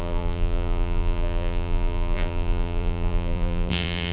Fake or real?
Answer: fake